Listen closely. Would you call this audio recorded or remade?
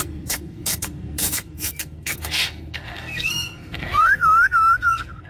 remade